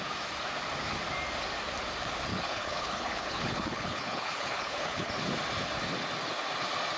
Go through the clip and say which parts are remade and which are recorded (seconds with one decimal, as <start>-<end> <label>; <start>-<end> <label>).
0.0-2.3 recorded; 2.3-5.1 remade; 5.1-7.0 recorded